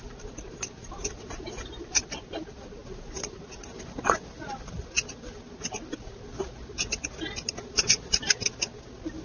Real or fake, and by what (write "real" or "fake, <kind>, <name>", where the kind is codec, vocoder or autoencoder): real